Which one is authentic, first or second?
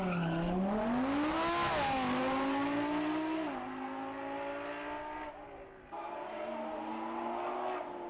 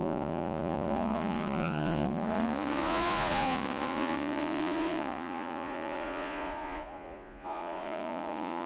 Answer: first